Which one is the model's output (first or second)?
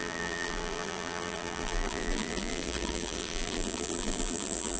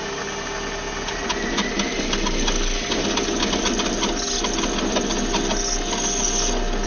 first